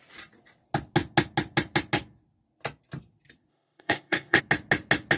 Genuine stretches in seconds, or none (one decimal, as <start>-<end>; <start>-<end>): 0.0-3.5; 4.4-5.2